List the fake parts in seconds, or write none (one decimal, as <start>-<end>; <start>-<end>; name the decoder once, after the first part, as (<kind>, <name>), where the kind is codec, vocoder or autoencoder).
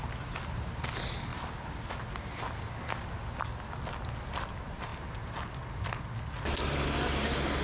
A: none